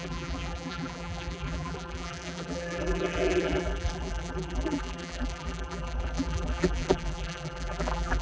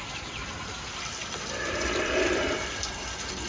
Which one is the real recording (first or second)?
second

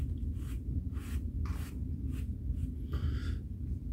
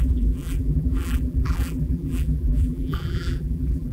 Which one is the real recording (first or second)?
first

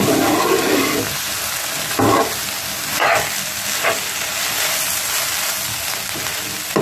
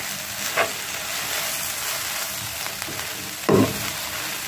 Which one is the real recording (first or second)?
first